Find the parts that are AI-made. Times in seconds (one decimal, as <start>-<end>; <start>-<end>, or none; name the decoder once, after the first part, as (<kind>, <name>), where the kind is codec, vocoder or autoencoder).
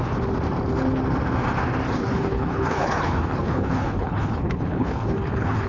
2.0-5.7 (codec, HILCodec)